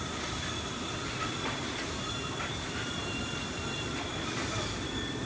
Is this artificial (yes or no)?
yes